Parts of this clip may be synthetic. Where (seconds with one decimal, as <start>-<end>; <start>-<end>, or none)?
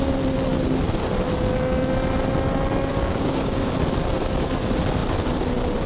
2.9-3.7